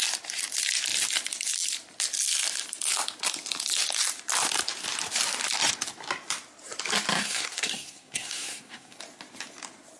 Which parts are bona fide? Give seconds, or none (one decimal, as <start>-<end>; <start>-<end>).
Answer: 0.0-7.2; 9.0-10.0

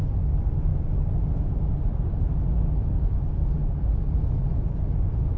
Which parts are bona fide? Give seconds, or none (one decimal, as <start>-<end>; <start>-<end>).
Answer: 0.0-5.4